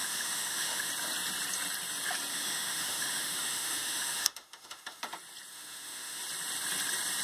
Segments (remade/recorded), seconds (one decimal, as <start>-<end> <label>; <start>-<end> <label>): 0.0-0.9 remade; 0.9-2.3 recorded; 2.3-5.0 remade; 5.0-5.5 recorded; 5.5-6.2 remade; 6.2-7.2 recorded